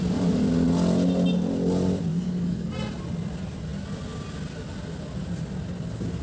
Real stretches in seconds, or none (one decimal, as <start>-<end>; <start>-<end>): 0.0-2.1; 2.7-6.2

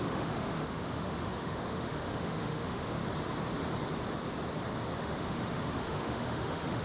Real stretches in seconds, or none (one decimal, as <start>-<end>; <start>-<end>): 3.0-5.0

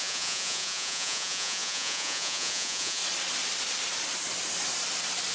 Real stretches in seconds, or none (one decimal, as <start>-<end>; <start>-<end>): 3.0-5.3

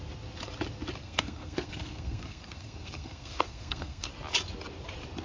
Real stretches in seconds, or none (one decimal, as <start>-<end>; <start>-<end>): 0.0-1.0; 4.1-5.2

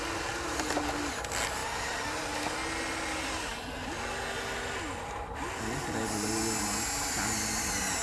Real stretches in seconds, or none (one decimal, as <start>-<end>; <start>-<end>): 0.0-8.0

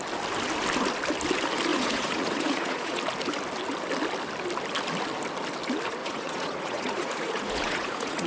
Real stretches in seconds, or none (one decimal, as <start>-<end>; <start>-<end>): 0.0-1.7; 3.0-6.0